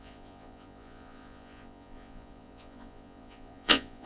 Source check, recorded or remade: remade